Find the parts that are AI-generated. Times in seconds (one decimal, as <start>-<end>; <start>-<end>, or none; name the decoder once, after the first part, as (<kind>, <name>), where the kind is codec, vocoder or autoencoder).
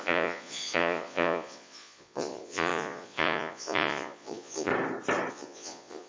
0.0-4.7 (vocoder, Vocos); 5.3-6.1